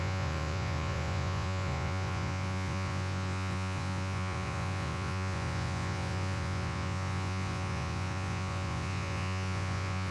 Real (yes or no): no